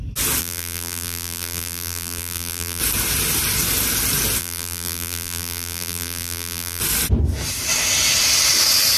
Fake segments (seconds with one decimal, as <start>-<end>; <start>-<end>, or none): 0.4-2.8; 4.4-6.8